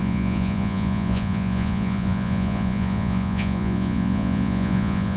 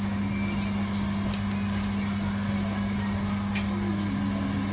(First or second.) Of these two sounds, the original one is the second